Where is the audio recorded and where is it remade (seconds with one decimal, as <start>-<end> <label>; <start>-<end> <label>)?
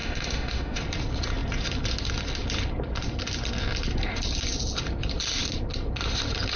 0.0-0.8 remade; 0.8-6.6 recorded